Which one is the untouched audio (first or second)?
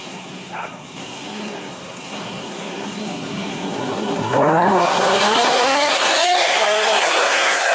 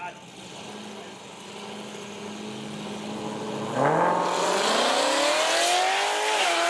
second